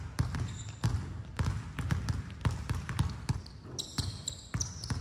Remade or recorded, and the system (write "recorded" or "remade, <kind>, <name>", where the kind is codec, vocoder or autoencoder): recorded